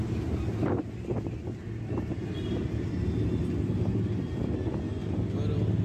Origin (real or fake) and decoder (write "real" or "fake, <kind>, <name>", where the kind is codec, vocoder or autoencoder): real